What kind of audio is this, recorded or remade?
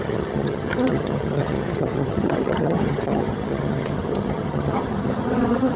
remade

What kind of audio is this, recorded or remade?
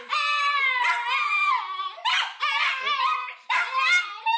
recorded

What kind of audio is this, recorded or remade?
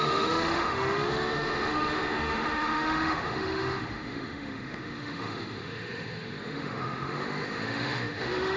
remade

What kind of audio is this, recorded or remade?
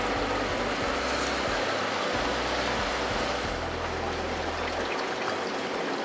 recorded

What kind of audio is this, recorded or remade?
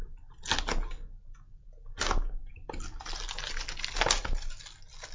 recorded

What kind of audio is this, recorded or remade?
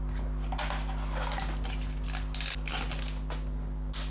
recorded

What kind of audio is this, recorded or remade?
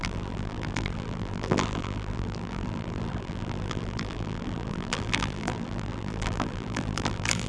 remade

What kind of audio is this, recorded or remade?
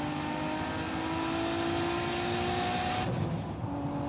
recorded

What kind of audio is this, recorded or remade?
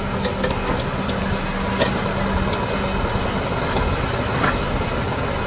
recorded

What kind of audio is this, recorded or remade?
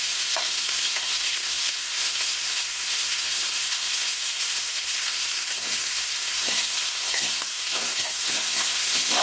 remade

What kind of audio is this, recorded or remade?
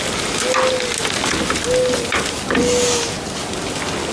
recorded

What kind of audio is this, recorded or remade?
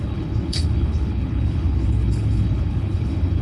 remade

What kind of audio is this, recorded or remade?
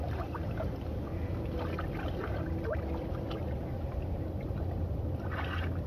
recorded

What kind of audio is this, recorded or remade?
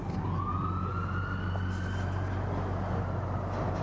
recorded